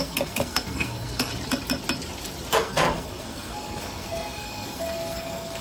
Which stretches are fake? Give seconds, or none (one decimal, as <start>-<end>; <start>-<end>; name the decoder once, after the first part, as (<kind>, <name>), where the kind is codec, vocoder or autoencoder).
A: 0.0-1.3 (codec, SNAC); 2.5-5.6